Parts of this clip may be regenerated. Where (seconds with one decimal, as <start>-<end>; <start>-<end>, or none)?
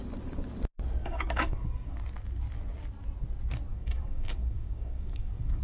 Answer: 1.0-1.9; 3.7-5.6